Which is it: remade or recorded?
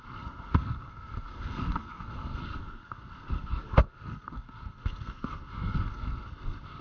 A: remade